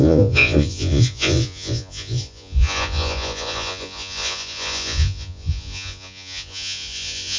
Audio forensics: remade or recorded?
remade